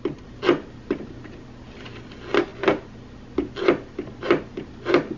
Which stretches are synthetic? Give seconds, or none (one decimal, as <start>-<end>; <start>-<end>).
none

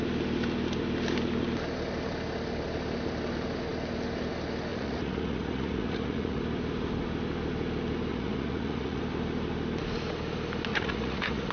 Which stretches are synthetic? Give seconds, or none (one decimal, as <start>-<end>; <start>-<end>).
4.7-6.4; 8.1-9.0; 10.7-11.5